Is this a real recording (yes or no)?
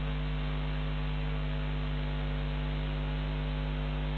yes